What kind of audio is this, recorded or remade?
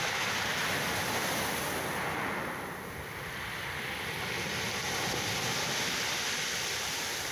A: recorded